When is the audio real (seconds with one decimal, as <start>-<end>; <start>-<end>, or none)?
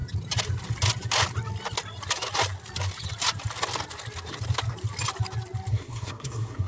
0.0-5.7